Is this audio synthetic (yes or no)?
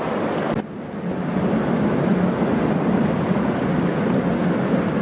no